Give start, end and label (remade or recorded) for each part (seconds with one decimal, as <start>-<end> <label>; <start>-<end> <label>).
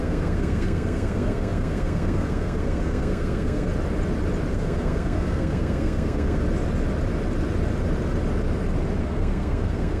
0.0-3.7 remade; 3.7-4.5 recorded; 4.5-6.4 remade; 6.4-9.0 recorded; 9.0-10.0 remade